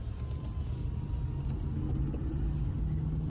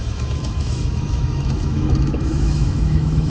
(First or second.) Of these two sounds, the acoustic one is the first